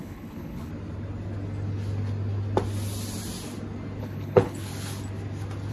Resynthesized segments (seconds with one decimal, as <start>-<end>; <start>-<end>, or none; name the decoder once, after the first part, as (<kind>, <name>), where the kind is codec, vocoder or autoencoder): 0.0-0.7 (codec, HILCodec); 4.0-4.7